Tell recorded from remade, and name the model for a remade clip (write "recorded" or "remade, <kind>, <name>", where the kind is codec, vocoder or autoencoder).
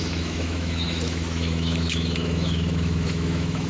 remade, autoencoder, DAC-VAE